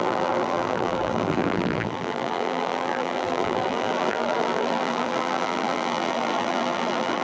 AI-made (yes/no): yes